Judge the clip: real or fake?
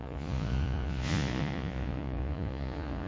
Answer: fake